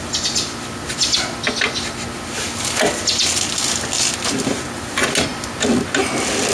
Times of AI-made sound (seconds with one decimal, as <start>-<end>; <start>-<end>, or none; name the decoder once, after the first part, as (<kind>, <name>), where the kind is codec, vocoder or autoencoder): none